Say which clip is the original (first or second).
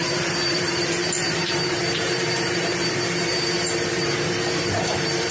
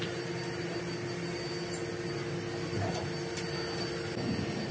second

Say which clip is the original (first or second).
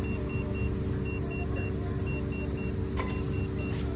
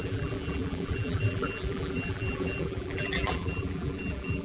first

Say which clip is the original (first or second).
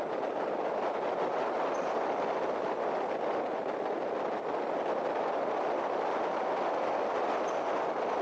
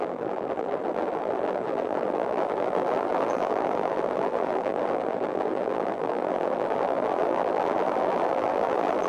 first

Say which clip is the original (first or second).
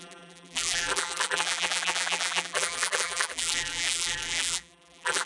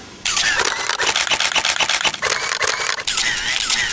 second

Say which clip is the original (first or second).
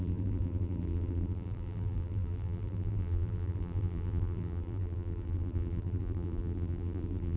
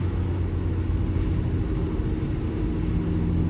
second